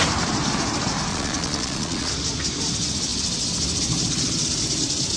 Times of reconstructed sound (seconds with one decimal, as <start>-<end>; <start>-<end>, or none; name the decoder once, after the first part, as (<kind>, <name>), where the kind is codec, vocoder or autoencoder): 1.1-2.1 (vocoder, Vocos)